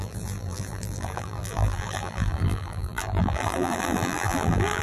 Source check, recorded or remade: remade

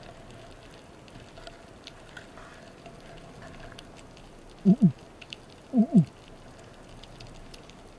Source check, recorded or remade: recorded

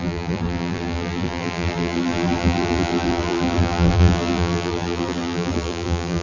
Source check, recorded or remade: remade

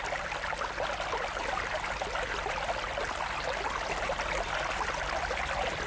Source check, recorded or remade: recorded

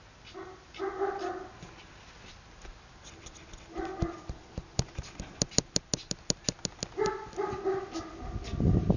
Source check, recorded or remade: recorded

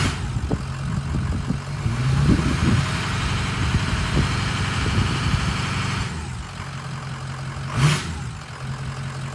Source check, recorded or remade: recorded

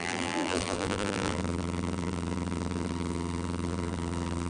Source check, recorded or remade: remade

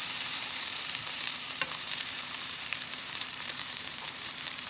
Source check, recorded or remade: remade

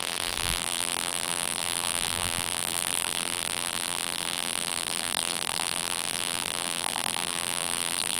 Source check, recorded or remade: remade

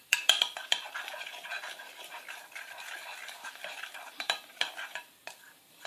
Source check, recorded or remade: remade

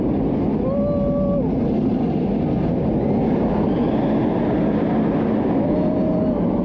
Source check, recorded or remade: recorded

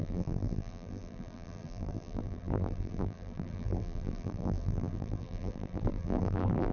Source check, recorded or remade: remade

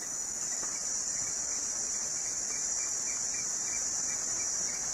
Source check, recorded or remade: remade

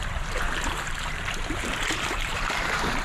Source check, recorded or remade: remade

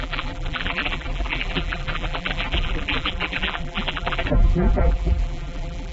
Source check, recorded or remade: remade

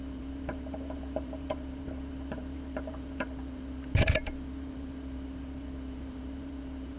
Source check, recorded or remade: remade